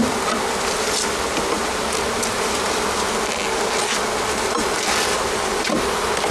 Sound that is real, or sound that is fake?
real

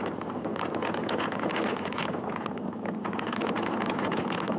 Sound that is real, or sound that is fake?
real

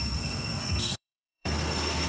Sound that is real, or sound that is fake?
fake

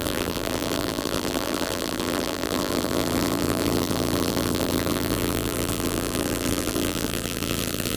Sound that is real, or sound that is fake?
fake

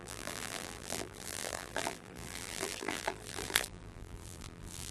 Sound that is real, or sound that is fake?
fake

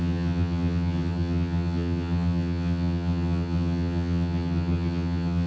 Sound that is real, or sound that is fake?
fake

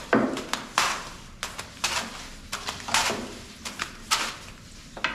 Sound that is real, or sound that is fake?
real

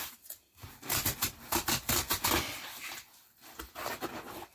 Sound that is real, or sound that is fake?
real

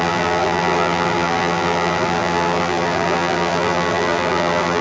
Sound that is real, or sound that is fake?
fake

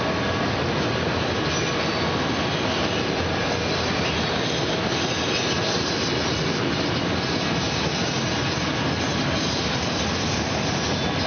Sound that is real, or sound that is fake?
real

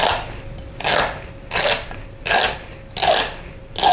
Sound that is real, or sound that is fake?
fake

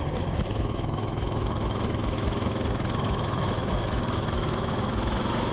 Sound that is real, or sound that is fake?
fake